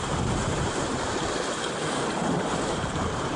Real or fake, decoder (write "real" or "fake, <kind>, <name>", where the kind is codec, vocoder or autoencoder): fake, vocoder, BigVGAN v2